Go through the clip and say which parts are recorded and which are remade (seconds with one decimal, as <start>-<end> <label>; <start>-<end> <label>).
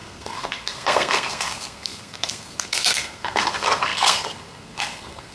0.0-5.3 remade